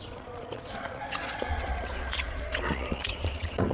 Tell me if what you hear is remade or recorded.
remade